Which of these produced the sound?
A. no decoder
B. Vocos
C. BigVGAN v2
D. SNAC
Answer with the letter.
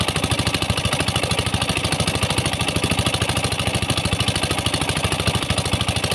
A